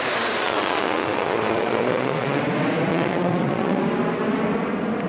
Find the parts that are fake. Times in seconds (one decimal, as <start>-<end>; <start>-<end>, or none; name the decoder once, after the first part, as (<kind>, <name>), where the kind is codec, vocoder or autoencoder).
0.4-2.4 (vocoder, Vocos); 2.9-3.8